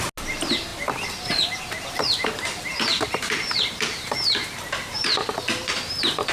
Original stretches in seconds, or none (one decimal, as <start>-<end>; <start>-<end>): 0.0-2.7

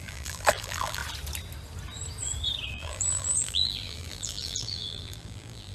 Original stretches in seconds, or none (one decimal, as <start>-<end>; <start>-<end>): 1.0-2.7